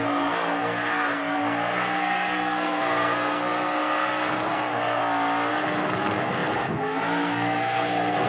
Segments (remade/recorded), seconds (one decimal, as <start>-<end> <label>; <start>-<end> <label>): 0.0-5.0 remade; 5.0-5.5 recorded; 5.5-8.3 remade